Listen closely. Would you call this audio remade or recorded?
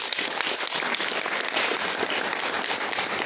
recorded